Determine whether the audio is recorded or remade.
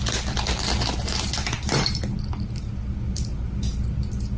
recorded